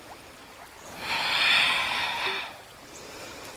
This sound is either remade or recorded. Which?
recorded